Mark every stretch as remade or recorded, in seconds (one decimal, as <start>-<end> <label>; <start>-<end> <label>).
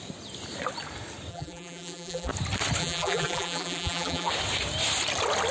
0.0-1.3 recorded; 1.3-2.3 remade; 2.3-2.8 recorded; 2.8-4.3 remade; 4.3-5.5 recorded